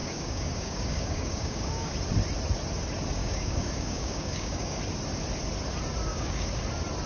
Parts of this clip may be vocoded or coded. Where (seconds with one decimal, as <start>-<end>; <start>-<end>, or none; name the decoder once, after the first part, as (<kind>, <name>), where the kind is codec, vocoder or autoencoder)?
0.0-1.9 (codec, DAC); 3.2-4.8; 6.1-6.6